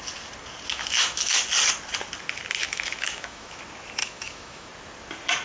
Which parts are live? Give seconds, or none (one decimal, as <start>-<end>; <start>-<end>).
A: 0.0-0.7; 1.4-2.6; 3.6-4.0; 4.7-5.4